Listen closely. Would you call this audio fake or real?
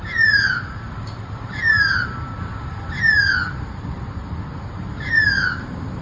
fake